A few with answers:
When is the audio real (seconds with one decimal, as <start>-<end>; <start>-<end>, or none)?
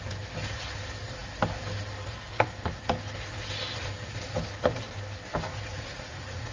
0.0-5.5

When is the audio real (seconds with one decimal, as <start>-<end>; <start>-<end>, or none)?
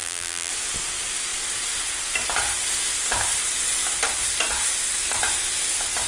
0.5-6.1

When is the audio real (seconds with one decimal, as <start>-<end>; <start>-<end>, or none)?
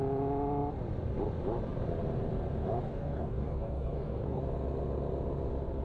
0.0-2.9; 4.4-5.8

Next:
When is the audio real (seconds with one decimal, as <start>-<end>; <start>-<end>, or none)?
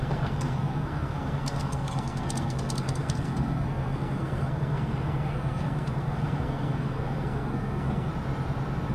8.1-8.9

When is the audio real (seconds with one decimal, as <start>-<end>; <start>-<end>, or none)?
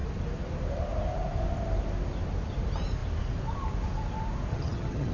0.0-4.5